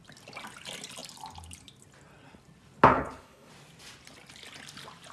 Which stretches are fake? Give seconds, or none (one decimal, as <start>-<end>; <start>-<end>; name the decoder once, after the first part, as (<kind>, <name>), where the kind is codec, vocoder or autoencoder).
2.9-3.5 (codec, HILCodec)